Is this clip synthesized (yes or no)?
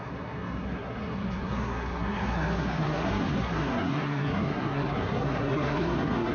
yes